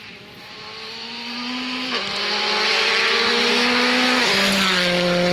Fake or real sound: real